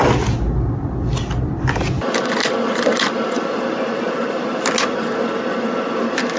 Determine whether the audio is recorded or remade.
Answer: recorded